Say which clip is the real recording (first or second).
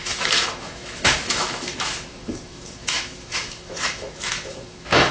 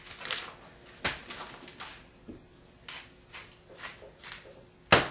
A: second